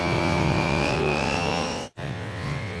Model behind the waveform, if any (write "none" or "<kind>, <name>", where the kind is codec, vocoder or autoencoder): vocoder, WaveNeXt